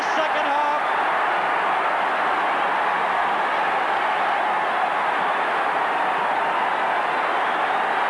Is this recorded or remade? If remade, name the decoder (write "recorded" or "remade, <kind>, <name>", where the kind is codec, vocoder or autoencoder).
recorded